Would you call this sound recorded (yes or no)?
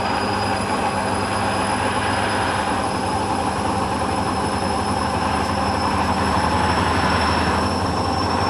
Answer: no